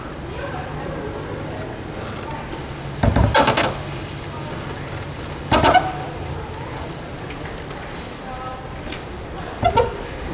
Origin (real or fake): real